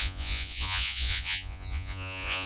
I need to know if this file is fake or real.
fake